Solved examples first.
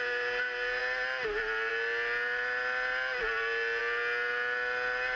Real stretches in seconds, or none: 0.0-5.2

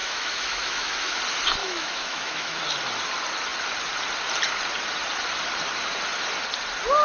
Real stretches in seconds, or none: 1.2-1.6; 2.6-7.0

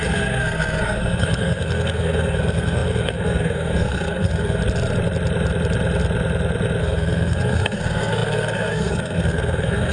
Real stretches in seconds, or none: 4.6-6.8

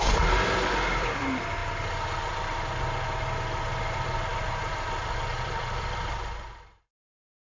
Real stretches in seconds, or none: 1.6-3.8

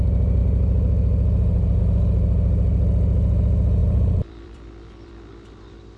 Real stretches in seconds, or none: 0.0-3.8; 5.1-6.0

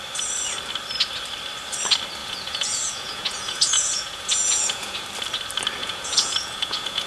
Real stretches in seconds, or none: 0.0-2.2; 5.0-5.8

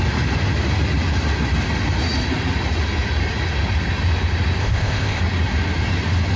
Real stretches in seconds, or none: 0.0-4.6; 5.2-6.4

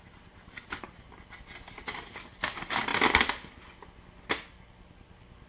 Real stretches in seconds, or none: 1.1-2.5; 2.9-5.5